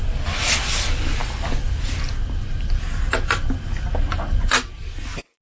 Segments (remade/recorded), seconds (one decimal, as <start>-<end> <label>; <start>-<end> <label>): 0.0-5.4 recorded